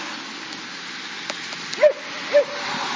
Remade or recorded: recorded